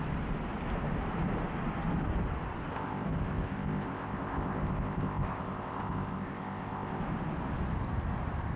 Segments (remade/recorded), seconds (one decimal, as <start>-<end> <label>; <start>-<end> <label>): 0.0-2.7 recorded; 2.7-7.0 remade; 7.0-8.6 recorded